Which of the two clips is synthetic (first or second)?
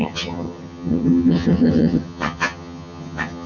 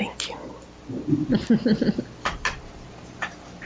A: first